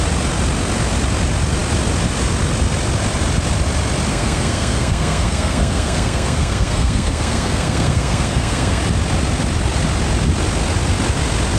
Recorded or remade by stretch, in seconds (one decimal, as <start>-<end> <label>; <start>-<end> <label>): 0.0-4.1 recorded; 4.1-8.8 remade; 8.8-11.6 recorded